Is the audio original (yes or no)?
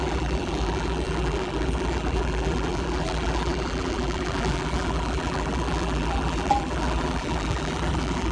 no